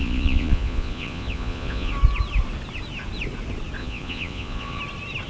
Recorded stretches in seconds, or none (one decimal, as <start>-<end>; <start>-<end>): 1.9-3.8; 4.8-5.3